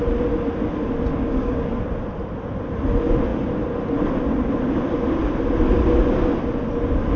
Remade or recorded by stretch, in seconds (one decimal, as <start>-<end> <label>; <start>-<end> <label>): 0.0-1.1 recorded; 1.1-1.7 remade; 1.7-7.2 recorded